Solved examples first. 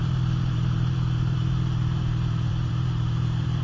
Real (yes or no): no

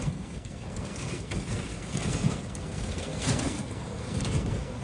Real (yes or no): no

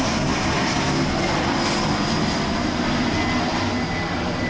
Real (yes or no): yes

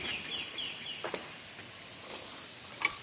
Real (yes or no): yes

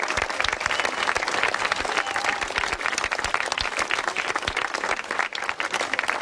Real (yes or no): yes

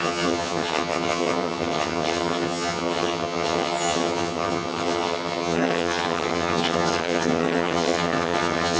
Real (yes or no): no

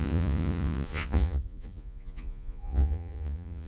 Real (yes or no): no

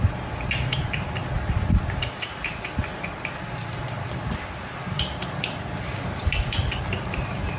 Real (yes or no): no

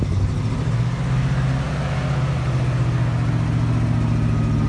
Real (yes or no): yes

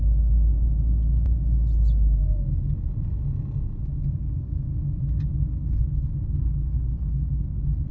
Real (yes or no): yes